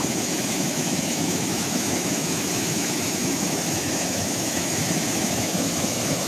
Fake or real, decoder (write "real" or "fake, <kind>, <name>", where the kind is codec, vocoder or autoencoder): fake, autoencoder, DAC-VAE